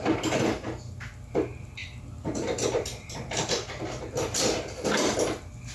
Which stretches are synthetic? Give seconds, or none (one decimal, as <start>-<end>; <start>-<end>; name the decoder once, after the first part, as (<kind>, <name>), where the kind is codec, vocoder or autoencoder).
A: 1.8-3.3 (vocoder, BigVGAN v2)